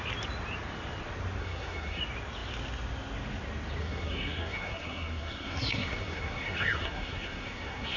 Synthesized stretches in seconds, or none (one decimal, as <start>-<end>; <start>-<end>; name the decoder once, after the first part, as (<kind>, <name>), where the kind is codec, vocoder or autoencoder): 1.4-2.0 (codec, SNAC); 3.8-8.0